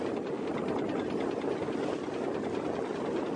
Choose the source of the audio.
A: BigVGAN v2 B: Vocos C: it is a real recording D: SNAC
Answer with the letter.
C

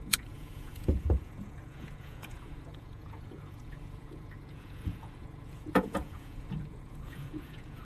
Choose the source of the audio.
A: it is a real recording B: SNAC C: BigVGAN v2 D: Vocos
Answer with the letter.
D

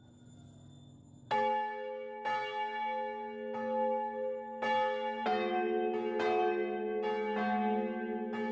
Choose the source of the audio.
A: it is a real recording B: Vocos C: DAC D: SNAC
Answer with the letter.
A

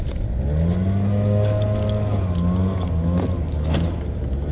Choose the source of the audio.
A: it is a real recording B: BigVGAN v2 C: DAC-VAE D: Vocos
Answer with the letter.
A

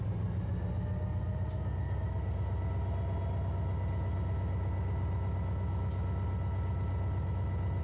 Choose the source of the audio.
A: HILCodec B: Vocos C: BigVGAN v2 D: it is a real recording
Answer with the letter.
D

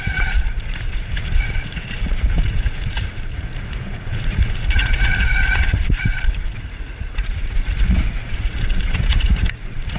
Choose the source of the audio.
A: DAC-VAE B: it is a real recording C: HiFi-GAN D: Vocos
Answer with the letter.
D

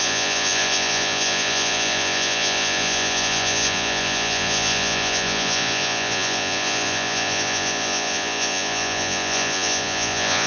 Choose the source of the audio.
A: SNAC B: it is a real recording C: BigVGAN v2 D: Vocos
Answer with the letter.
D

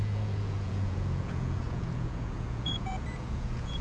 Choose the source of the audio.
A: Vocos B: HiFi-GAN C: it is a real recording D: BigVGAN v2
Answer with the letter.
A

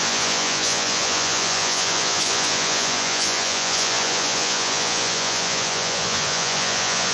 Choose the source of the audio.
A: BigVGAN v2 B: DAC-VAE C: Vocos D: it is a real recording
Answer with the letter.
C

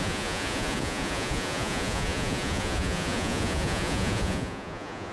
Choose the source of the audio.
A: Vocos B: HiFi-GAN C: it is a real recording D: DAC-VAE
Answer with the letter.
A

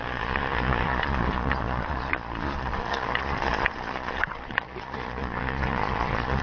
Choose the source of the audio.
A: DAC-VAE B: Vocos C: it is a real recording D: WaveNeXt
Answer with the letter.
B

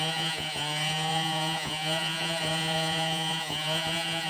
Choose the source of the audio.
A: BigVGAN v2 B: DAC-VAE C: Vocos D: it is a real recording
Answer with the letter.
C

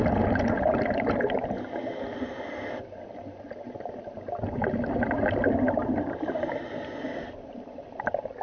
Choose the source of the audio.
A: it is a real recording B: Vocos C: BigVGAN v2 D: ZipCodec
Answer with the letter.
A